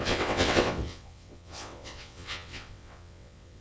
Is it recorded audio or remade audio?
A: remade